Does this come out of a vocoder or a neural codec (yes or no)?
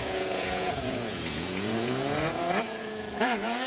yes